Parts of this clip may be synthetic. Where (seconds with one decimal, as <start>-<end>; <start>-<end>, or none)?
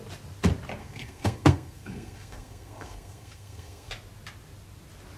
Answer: 0.8-3.9